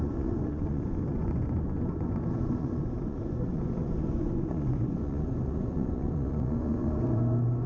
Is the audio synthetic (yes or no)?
yes